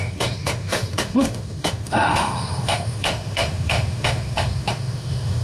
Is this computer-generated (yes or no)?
yes